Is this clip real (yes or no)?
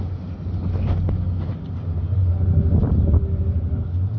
yes